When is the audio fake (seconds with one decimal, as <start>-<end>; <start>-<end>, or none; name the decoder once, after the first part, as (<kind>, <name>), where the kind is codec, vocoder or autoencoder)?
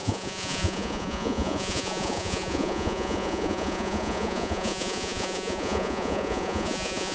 0.0-7.1 (vocoder, Vocos)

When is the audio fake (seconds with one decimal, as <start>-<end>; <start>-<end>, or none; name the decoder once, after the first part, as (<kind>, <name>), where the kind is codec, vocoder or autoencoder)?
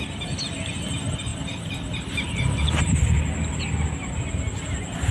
none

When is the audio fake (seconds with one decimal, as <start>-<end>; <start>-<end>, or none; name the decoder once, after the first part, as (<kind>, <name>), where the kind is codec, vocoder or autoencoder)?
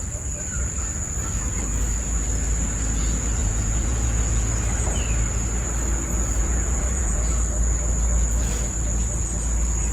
3.4-4.2 (vocoder, Vocos); 6.4-7.3